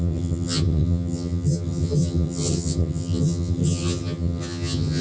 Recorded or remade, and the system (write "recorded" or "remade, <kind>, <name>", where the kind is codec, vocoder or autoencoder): remade, vocoder, HiFi-GAN